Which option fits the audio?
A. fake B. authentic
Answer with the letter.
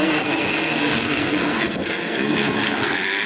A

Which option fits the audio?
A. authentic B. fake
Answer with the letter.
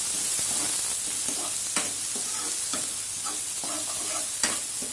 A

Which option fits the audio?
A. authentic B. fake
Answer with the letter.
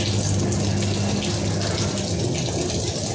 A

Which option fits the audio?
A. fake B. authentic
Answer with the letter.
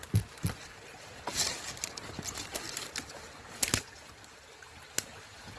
B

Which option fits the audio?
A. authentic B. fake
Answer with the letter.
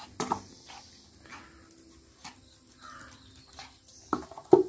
A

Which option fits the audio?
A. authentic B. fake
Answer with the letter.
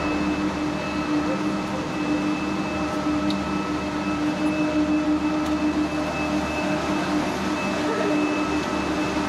A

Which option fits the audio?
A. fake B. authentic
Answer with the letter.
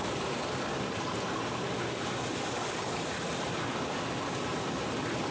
B